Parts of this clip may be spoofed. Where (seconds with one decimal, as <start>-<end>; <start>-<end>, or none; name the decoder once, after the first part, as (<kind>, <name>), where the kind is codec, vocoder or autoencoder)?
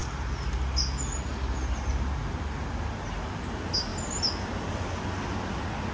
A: none